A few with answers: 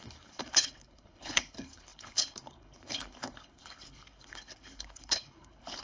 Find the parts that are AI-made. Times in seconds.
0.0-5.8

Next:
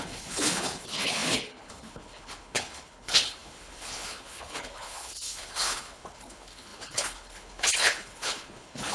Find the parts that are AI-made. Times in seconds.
0.0-8.9

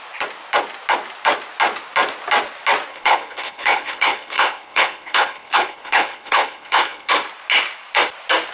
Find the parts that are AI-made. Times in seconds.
2.9-7.1

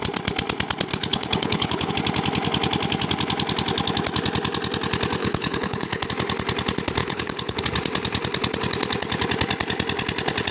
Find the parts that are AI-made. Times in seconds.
0.9-1.9; 5.2-6.1; 7.0-7.6

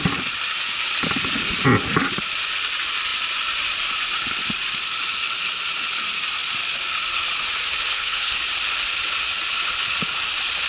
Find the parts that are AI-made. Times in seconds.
7.9-8.4

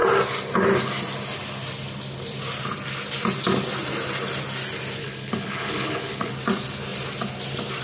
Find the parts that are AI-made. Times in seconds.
5.0-6.3

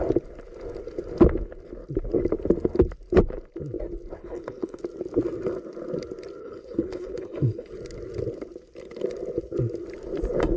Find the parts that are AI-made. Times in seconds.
4.2-4.8; 6.4-7.7